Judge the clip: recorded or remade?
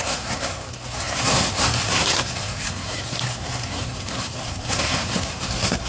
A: remade